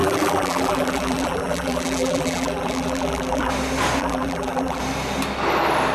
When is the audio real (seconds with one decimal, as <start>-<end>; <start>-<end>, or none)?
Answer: 3.5-4.0; 4.8-5.9